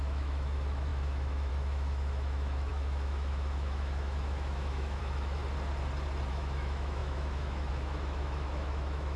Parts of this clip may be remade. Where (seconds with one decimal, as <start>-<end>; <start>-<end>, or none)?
0.0-5.4; 6.3-9.2